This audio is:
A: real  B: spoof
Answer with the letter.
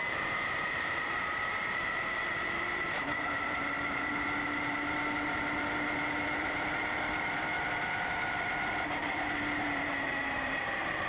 B